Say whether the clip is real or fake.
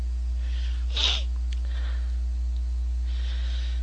real